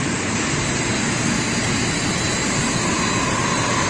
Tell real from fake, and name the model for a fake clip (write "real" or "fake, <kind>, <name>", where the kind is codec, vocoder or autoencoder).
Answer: real